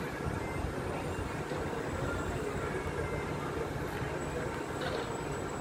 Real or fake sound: real